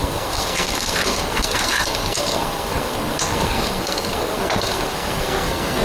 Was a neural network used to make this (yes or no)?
yes